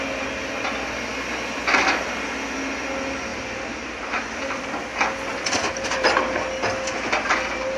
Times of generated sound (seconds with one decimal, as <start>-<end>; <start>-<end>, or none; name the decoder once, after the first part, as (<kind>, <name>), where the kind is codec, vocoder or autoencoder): 3.3-4.6 (vocoder, BigVGAN v2)